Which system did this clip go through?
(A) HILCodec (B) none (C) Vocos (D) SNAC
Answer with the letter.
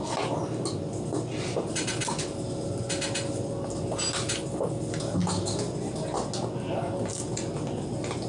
B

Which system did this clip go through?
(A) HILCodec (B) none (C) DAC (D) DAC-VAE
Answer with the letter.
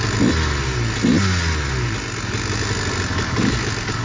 B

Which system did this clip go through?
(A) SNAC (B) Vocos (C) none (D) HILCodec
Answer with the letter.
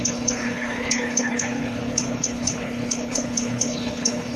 D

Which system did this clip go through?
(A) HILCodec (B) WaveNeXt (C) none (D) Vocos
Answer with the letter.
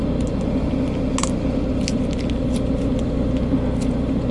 C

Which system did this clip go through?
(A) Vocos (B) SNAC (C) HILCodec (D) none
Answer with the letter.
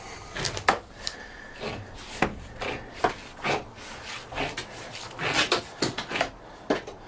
D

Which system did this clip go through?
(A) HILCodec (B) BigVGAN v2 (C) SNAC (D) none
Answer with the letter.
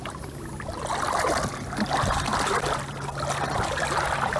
D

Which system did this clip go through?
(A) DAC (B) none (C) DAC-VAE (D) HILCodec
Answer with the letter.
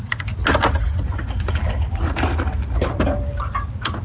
B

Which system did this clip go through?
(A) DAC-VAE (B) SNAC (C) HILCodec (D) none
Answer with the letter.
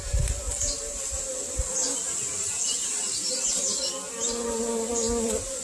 D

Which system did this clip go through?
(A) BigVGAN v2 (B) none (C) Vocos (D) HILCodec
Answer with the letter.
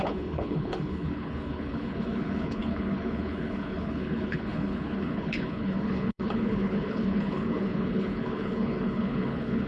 D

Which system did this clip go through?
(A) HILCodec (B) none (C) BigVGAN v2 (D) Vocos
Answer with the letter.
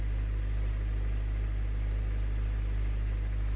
B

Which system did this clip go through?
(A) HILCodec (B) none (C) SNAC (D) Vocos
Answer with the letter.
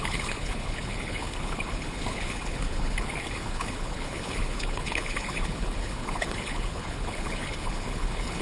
A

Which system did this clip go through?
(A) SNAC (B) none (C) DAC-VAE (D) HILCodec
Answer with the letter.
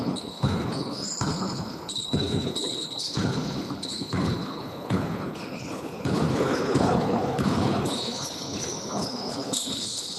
D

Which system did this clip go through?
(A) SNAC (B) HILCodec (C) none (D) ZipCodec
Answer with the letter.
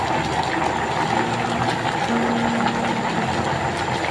C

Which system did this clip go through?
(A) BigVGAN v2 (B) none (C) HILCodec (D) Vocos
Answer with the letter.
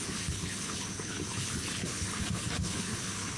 C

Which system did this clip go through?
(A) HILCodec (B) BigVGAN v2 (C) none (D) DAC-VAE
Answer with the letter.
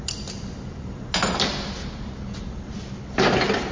C